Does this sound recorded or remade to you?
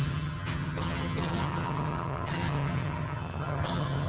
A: remade